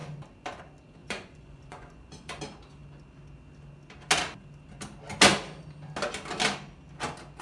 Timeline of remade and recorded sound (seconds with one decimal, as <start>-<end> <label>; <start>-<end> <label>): 0.0-1.0 recorded; 1.0-2.4 remade; 2.4-7.4 recorded